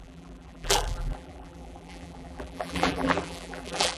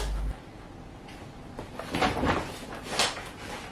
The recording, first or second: second